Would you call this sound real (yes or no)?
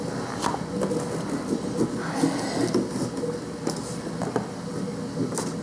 yes